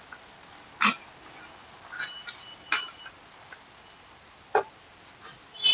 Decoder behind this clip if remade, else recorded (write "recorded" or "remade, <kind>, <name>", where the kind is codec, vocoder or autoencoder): recorded